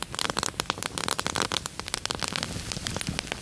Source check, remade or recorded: remade